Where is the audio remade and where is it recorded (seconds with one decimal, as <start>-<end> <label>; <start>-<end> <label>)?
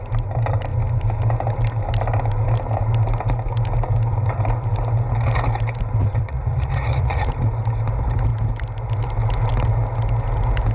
0.0-6.0 recorded; 6.0-7.3 remade; 7.3-10.7 recorded